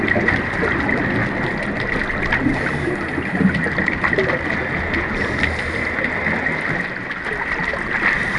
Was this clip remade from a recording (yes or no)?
no